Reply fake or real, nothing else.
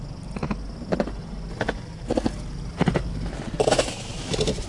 real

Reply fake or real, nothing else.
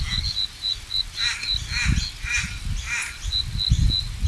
real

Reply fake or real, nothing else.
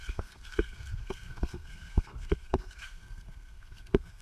fake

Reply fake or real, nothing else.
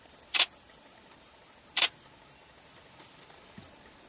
real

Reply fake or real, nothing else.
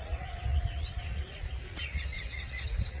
fake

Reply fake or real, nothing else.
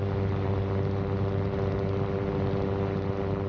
real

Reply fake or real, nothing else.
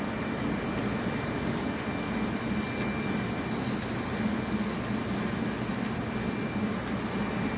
real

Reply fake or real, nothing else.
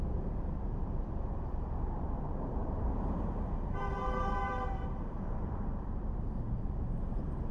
fake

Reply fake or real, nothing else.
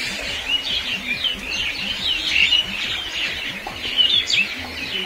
real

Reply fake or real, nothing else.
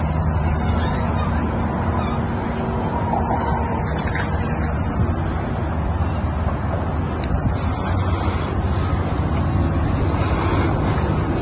real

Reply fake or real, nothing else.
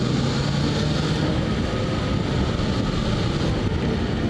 real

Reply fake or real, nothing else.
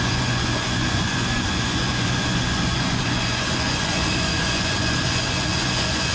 fake